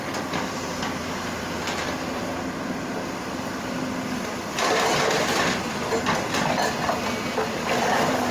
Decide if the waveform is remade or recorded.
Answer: remade